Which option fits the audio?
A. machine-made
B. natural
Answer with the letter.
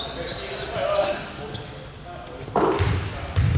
B